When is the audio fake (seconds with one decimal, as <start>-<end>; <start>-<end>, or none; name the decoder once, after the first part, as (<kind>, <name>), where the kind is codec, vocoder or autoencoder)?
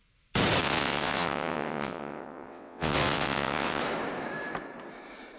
0.6-3.8 (vocoder, WaveNeXt)